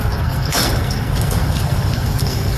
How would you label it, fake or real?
fake